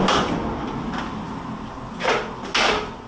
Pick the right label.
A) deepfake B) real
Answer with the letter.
B